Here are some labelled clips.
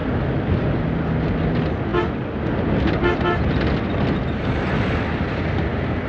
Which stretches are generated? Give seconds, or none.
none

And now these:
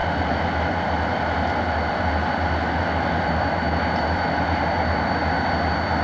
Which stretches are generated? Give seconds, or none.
none

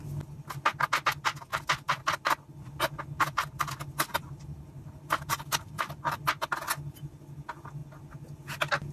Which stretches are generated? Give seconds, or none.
4.1-6.2

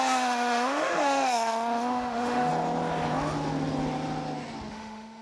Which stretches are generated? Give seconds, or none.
0.0-2.5; 4.7-5.2

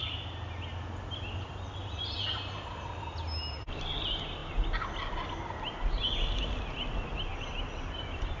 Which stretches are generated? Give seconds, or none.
none

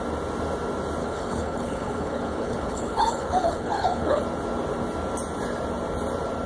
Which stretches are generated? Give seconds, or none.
1.0-4.2

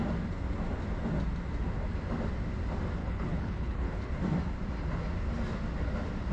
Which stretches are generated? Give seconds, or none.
3.0-4.1

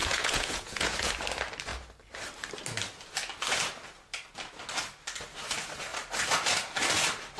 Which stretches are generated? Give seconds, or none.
0.0-1.1